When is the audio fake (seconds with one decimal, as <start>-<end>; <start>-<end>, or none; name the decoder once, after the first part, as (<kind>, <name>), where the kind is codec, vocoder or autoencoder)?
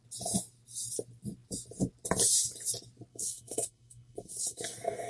3.1-5.1 (codec, SNAC)